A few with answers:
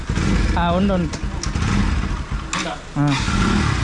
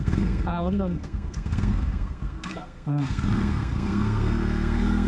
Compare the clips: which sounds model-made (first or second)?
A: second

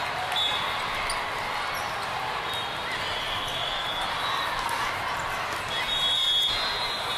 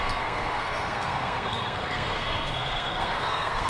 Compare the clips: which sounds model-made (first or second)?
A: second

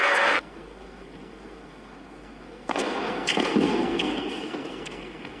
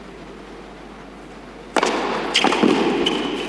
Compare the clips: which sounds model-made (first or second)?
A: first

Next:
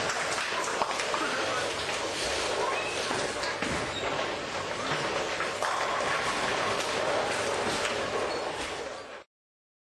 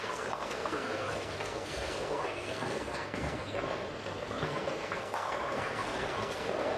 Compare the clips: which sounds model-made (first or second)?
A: second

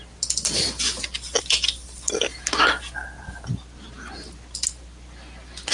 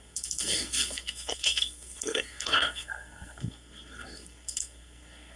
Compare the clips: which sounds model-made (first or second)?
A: second